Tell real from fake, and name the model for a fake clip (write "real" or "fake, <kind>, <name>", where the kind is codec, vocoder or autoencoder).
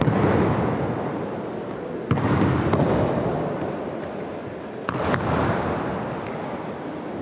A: real